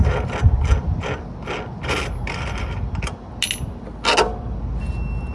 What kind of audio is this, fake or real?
real